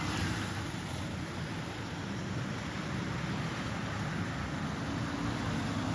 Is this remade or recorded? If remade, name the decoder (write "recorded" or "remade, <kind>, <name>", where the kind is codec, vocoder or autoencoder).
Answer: recorded